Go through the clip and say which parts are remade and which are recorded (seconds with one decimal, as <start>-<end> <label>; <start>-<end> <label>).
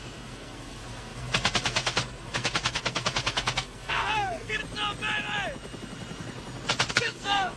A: 0.0-4.6 remade; 4.6-6.9 recorded; 6.9-7.6 remade